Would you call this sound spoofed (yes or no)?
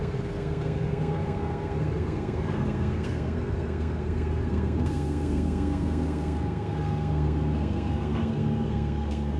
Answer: yes